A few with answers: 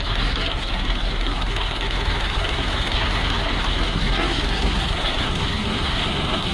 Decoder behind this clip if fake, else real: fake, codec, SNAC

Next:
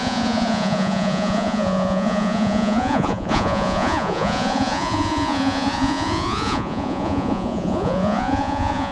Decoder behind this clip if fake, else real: fake, vocoder, Vocos